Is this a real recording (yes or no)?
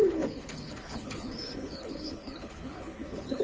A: no